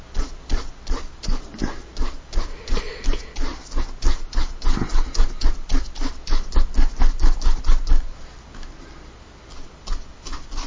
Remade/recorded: recorded